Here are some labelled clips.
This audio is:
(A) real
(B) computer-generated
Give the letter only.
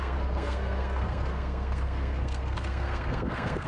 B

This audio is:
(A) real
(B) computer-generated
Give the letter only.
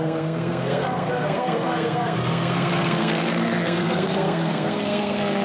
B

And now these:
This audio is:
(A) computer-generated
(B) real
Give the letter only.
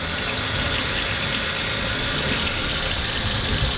B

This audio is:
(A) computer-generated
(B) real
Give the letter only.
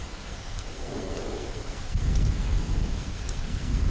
A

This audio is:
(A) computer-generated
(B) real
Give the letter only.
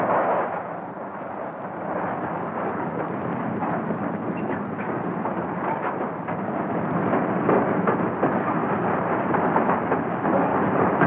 B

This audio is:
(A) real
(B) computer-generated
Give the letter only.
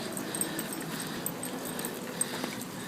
A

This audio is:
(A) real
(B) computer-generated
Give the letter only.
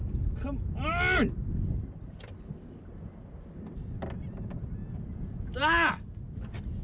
A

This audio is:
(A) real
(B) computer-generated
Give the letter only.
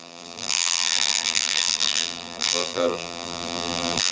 B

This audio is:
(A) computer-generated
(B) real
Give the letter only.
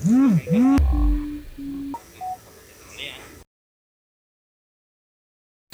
B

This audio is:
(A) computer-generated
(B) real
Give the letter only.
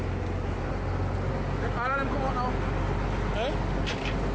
B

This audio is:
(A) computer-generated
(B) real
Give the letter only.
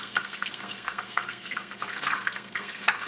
A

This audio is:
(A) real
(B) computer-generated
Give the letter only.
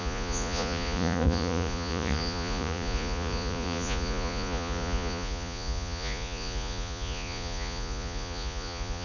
B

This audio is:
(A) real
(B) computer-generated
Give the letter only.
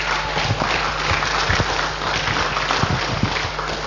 A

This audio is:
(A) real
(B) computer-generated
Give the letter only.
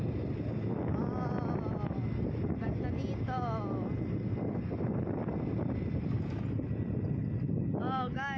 A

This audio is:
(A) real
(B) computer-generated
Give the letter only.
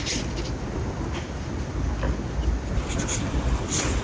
A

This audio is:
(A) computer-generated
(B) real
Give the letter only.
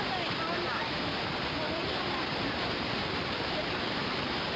A